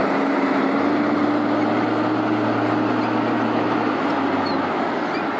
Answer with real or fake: real